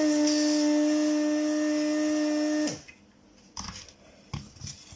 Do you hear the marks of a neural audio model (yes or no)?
no